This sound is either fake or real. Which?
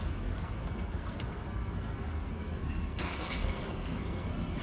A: fake